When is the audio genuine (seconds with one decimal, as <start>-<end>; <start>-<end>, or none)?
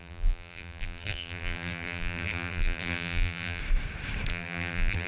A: 3.6-4.3